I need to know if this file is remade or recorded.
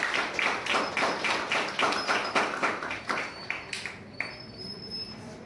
recorded